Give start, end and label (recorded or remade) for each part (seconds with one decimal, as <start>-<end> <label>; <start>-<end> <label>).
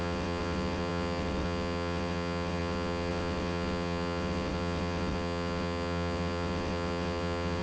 0.0-7.6 remade